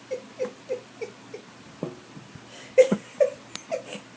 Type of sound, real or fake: real